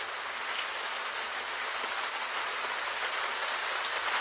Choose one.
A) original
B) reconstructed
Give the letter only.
A